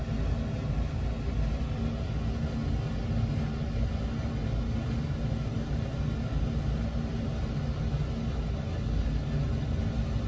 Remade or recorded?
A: recorded